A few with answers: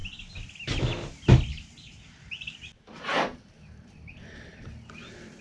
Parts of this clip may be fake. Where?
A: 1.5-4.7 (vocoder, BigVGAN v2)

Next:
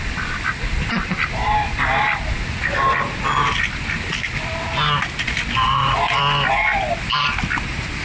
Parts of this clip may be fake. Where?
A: none

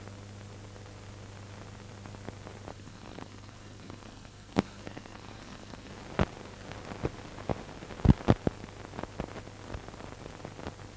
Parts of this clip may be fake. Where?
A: 2.7-5.9 (codec, SNAC)

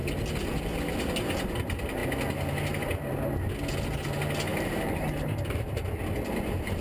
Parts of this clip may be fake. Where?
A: 4.5-5.8 (vocoder, BigVGAN v2)